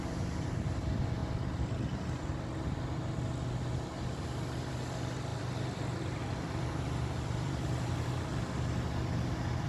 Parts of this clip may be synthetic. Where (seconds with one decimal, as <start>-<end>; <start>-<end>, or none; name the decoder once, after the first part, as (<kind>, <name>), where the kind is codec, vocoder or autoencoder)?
5.3-8.4 (vocoder, BigVGAN v2)